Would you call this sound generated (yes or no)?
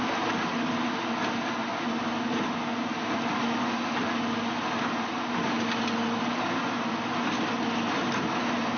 no